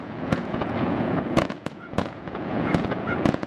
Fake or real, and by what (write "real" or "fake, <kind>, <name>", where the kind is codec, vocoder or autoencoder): fake, vocoder, Vocos